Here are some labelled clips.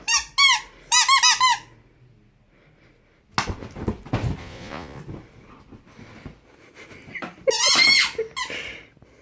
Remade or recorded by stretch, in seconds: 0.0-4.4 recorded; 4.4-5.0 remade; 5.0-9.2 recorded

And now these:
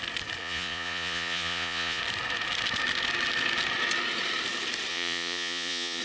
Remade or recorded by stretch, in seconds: 0.0-0.4 recorded; 0.4-2.0 remade; 2.0-4.9 recorded; 4.9-6.0 remade

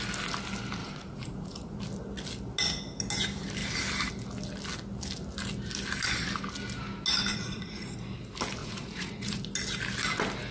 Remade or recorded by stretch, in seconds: 0.0-0.8 recorded; 0.8-1.8 remade; 1.8-7.3 recorded; 7.3-7.9 remade; 7.9-8.6 recorded; 8.6-9.4 remade; 9.4-10.5 recorded

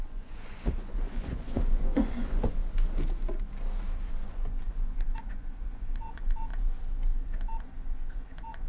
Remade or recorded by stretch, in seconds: 0.0-2.6 remade; 2.6-4.1 recorded; 4.1-6.5 remade; 6.5-7.6 recorded; 7.6-8.7 remade

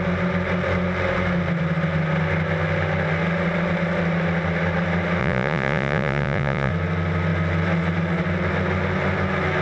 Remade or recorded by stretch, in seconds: 0.0-5.2 recorded; 5.2-6.7 remade; 6.7-9.6 recorded

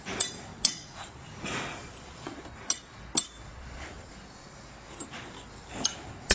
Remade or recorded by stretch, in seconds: 0.0-0.5 recorded; 0.5-1.3 remade; 1.3-1.8 recorded; 1.8-2.4 remade; 2.4-3.5 recorded; 3.5-4.1 remade; 4.1-6.3 recorded